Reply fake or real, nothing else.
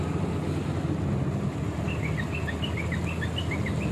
real